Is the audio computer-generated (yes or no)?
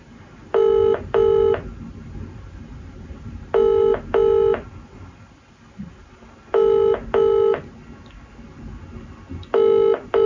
no